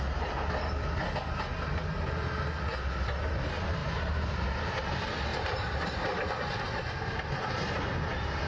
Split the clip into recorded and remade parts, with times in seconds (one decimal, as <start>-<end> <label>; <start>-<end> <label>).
0.0-3.8 recorded; 3.8-4.8 remade; 4.8-5.3 recorded; 5.3-7.8 remade; 7.8-8.5 recorded